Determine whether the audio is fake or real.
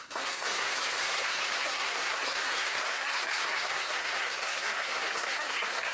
fake